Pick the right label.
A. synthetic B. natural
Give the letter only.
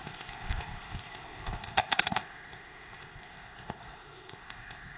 A